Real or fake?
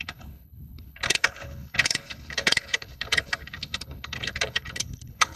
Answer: fake